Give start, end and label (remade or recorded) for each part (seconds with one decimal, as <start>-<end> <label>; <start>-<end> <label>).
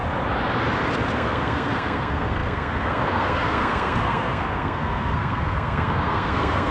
0.0-1.1 recorded; 1.1-6.7 remade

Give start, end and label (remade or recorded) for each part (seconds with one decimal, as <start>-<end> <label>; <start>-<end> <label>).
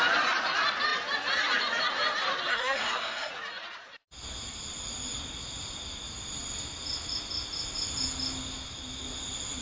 0.0-2.5 recorded; 2.5-3.3 remade; 3.3-9.6 recorded